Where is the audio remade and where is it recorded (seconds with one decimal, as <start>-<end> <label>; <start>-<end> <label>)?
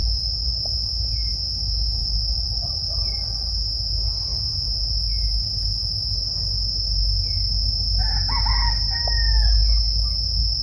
0.0-0.6 remade; 0.6-2.0 recorded; 2.0-3.5 remade; 3.5-10.6 recorded